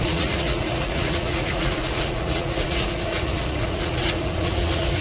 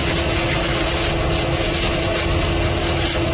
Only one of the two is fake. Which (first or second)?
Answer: first